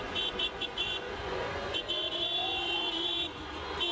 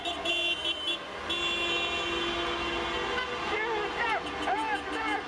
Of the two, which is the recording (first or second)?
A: second